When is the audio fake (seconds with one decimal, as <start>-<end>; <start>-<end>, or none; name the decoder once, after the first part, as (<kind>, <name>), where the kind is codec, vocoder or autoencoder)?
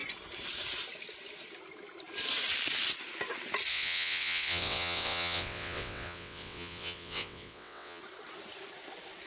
3.7-8.0 (vocoder, WaveNeXt)